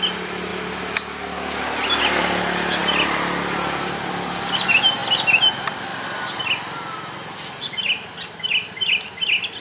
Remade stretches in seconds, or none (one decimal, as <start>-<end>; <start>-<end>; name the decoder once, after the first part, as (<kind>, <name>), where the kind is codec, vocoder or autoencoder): none